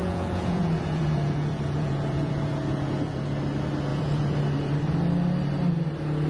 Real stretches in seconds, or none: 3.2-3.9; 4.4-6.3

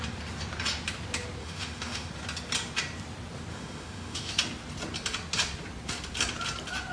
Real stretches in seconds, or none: 0.0-1.4; 2.1-3.5; 4.3-6.9

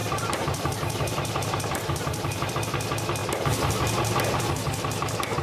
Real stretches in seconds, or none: 2.5-5.4

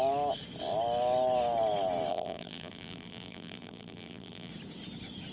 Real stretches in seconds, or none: 0.0-2.1; 4.5-5.3

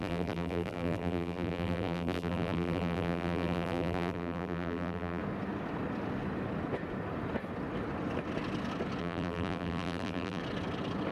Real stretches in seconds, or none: 5.2-9.0; 10.4-11.1

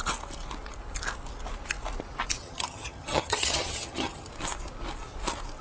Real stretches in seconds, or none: 0.0-2.4; 4.3-5.6